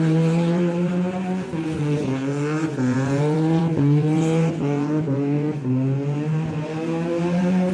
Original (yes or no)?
no